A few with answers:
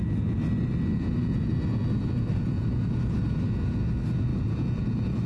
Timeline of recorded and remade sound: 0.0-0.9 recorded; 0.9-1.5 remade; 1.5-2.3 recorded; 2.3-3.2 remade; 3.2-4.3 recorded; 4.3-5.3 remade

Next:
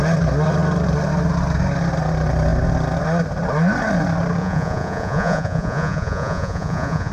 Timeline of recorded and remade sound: 0.0-4.4 recorded; 4.4-7.1 remade

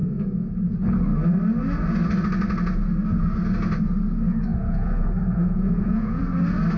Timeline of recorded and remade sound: 0.0-0.5 remade; 0.5-4.5 recorded; 4.5-6.2 remade; 6.2-6.8 recorded

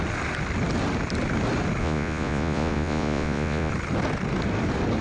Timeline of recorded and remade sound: 0.0-1.8 recorded; 1.8-3.7 remade; 3.7-5.0 recorded

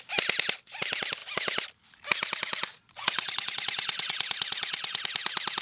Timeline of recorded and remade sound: 0.0-2.7 recorded; 2.7-5.0 remade; 5.0-5.6 recorded